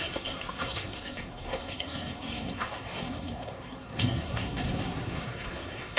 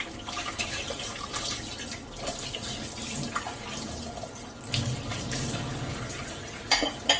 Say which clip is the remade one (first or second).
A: first